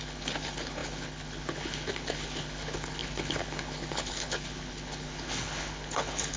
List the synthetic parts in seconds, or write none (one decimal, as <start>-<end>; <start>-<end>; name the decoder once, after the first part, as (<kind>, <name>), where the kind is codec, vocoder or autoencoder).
0.0-6.4 (codec, HILCodec)